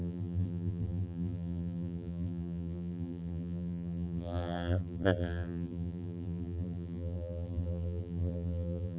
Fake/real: fake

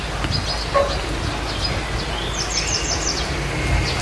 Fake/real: real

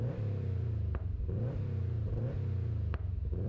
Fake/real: real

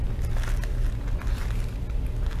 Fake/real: real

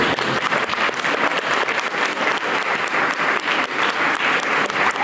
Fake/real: real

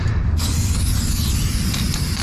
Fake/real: fake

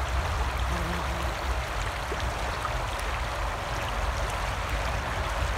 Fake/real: real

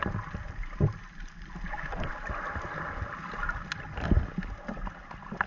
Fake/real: real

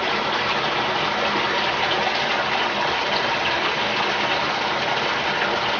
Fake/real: real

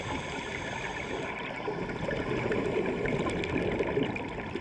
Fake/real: real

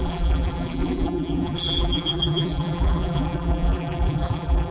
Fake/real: fake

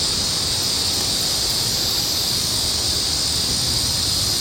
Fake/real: real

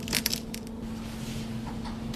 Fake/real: real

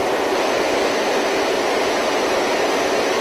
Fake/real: real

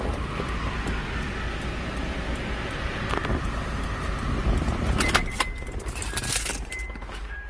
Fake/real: real